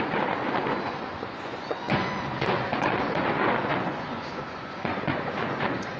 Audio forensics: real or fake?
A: fake